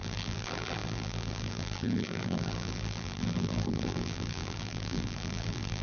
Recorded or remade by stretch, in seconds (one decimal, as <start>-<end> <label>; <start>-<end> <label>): 0.0-5.8 remade